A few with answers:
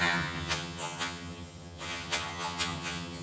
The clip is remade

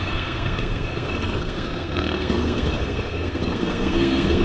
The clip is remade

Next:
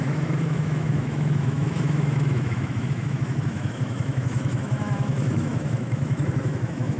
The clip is remade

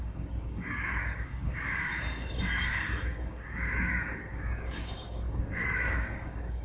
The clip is remade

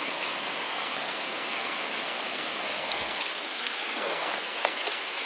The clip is remade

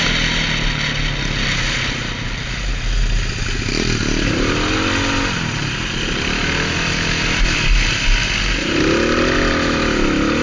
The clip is recorded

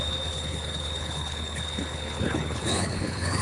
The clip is remade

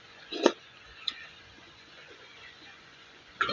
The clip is remade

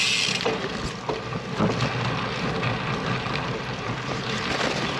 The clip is recorded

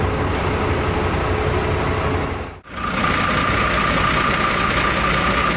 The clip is recorded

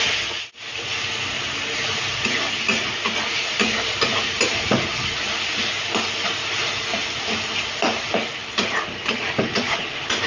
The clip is recorded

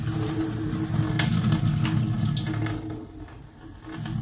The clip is recorded